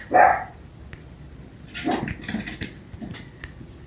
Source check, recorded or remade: recorded